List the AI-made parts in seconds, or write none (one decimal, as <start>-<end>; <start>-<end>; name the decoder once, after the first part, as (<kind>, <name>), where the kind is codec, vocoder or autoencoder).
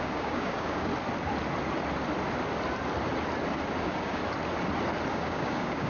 0.0-0.9 (codec, DAC); 3.8-4.2; 5.1-5.9